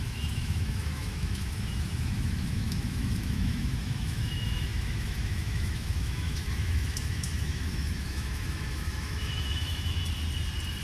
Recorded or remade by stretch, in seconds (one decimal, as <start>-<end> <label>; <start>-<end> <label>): 0.0-10.0 remade; 10.0-10.8 recorded